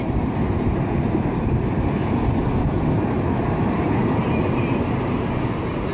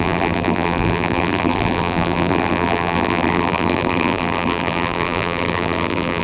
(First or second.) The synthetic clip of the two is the second